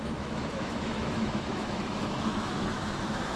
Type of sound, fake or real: fake